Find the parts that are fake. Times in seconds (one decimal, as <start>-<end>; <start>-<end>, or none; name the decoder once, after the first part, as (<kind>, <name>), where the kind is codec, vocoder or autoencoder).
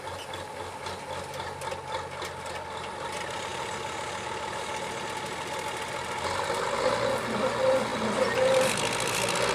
3.5-4.8 (vocoder, BigVGAN v2); 7.9-8.6